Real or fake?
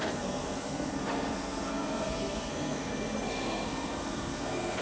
fake